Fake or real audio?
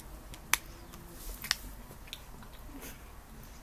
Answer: real